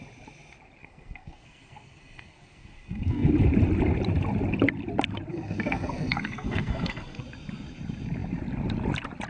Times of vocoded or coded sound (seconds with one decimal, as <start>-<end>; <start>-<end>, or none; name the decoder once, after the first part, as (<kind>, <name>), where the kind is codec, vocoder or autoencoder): 0.8-3.3 (codec, SNAC); 5.3-7.2